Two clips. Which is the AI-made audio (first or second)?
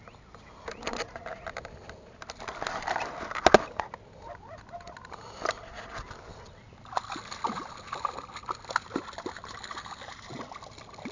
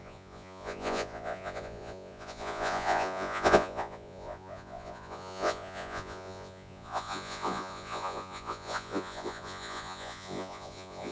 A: second